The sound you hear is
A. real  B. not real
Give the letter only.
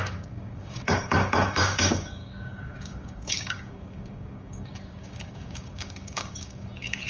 B